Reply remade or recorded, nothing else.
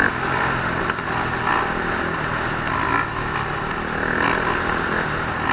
recorded